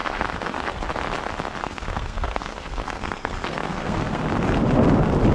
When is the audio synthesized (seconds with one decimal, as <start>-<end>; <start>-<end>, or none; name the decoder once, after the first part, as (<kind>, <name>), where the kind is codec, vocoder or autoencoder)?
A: 0.0-0.8 (codec, SNAC); 1.6-4.2